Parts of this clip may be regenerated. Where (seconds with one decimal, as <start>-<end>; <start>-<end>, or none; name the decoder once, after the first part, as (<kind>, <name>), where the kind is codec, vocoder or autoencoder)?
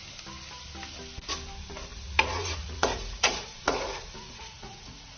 1.9-5.2 (vocoder, Vocos)